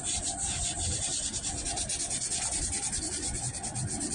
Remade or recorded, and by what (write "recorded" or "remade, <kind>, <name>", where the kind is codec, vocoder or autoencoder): recorded